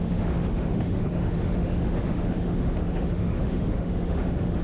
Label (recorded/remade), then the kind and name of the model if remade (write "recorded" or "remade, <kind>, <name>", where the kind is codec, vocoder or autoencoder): remade, autoencoder, DAC-VAE